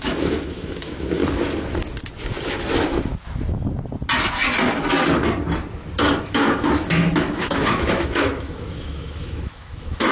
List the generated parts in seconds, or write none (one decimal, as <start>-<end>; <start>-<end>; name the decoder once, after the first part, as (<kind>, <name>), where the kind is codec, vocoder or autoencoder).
0.0-1.2 (autoencoder, DAC-VAE); 6.2-10.1